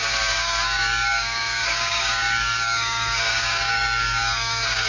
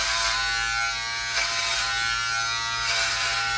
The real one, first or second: second